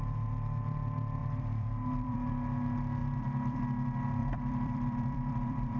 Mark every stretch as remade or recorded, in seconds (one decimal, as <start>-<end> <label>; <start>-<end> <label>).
0.0-1.2 recorded; 1.2-2.3 remade; 2.3-3.0 recorded; 3.0-3.6 remade; 3.6-4.2 recorded; 4.2-5.8 remade